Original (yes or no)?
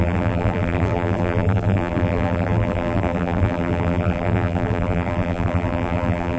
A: no